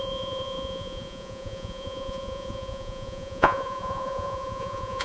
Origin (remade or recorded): remade